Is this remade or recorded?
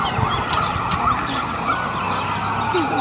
recorded